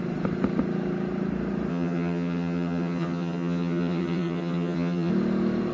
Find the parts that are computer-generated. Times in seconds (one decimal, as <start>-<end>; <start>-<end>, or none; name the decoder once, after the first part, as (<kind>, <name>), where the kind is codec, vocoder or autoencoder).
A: 1.7-5.1 (vocoder, HiFi-GAN)